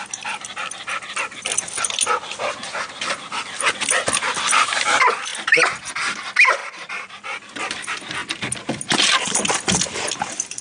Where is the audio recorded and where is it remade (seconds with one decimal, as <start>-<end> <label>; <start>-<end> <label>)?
0.0-0.6 recorded; 0.6-2.1 remade; 2.1-6.6 recorded; 6.6-7.1 remade; 7.1-8.2 recorded; 8.2-10.6 remade